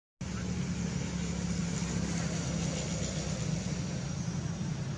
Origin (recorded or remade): recorded